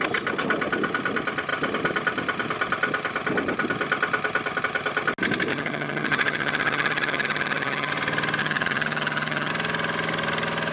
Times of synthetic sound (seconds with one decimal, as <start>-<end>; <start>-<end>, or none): 5.5-7.9; 8.4-9.5